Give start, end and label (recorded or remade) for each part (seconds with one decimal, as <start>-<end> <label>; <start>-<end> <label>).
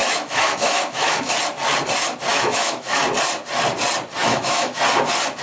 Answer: 0.0-1.3 remade; 1.3-2.3 recorded; 2.3-3.0 remade; 3.0-4.2 recorded; 4.2-4.8 remade; 4.8-5.4 recorded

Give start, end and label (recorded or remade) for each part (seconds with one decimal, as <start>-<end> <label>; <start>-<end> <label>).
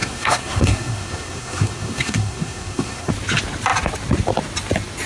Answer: 0.0-3.1 remade; 3.1-5.1 recorded